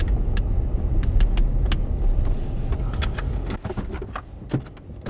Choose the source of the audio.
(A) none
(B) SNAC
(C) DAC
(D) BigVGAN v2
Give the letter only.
A